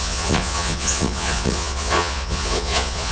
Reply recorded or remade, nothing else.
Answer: remade